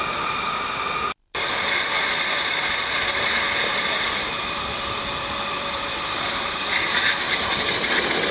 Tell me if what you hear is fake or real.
fake